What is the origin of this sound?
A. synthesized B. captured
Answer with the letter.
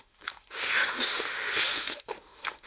A